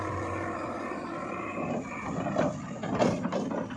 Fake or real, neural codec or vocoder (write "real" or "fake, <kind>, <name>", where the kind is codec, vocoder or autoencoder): real